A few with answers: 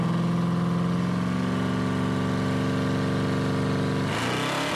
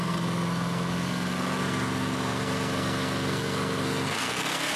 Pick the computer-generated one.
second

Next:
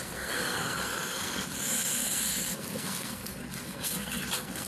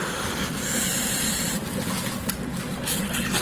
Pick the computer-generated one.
first